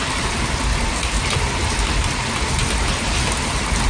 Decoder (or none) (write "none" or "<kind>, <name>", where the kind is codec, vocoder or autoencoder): none